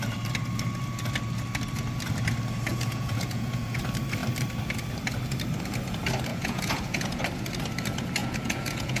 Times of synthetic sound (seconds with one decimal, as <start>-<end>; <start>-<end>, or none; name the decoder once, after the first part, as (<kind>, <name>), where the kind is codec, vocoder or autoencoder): 2.7-3.8 (vocoder, Vocos); 6.3-7.2; 8.2-9.0